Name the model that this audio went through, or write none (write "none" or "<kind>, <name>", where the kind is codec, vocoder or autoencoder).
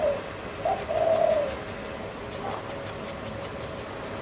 none